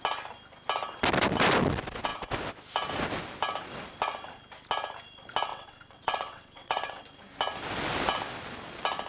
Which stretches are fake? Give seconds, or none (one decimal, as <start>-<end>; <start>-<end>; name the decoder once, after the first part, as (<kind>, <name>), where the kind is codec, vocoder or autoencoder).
5.5-7.0 (vocoder, WaveNeXt)